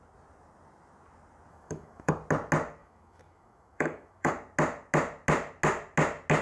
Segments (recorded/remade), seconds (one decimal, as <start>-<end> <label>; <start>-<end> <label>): 0.0-1.5 recorded; 1.5-2.1 remade; 2.1-2.8 recorded; 2.8-4.3 remade; 4.3-6.4 recorded